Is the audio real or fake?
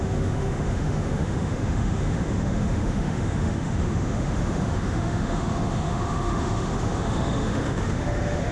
fake